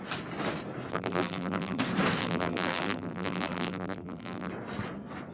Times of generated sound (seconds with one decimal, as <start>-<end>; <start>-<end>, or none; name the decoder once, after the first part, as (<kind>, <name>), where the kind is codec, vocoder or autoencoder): 0.9-1.8 (vocoder, BigVGAN v2); 2.2-4.5